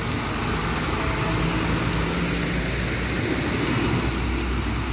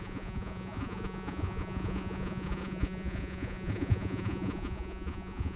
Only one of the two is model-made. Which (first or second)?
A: second